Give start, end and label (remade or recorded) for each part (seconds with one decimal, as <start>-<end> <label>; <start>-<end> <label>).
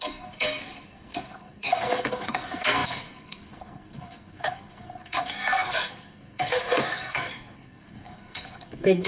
0.0-9.1 remade